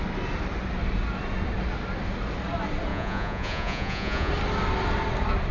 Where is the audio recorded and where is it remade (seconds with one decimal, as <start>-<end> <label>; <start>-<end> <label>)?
0.0-2.9 recorded; 2.9-4.3 remade; 4.3-5.5 recorded